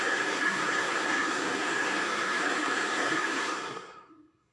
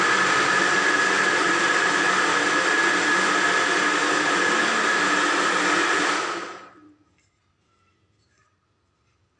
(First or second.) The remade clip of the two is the first